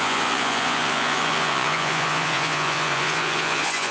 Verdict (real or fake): fake